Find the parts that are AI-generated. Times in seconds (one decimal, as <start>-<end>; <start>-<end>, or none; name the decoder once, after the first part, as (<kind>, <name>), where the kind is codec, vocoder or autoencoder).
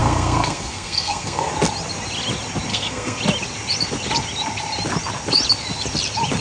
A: 0.0-1.5 (codec, SNAC); 2.7-3.2